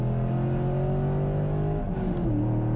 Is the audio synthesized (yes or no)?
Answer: no